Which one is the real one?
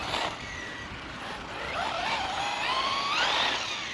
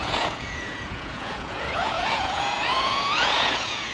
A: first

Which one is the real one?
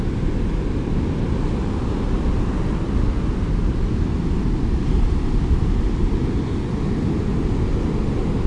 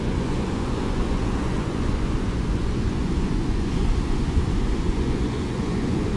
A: first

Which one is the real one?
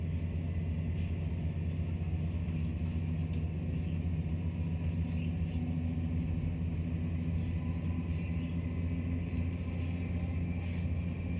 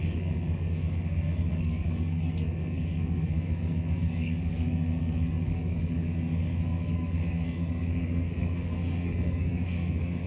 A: first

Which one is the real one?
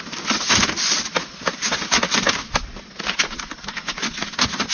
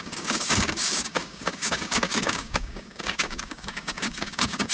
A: first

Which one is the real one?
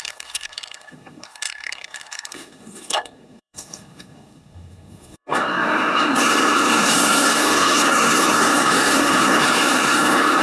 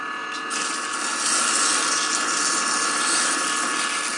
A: second